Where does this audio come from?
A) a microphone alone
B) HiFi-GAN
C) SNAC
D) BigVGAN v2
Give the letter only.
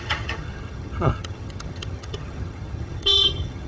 B